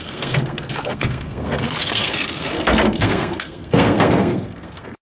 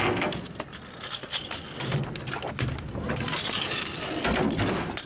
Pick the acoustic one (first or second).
second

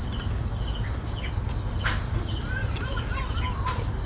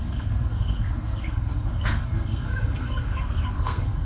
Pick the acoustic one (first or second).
first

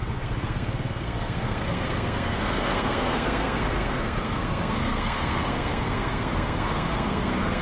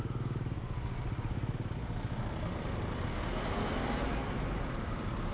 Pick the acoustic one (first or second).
second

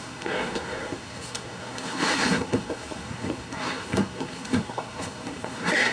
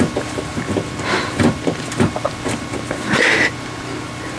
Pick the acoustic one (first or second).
second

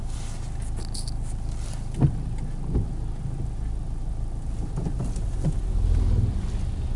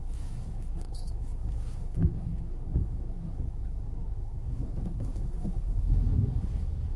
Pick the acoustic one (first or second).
first